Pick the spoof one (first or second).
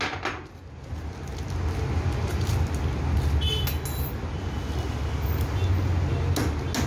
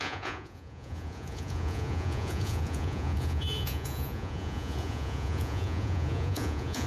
second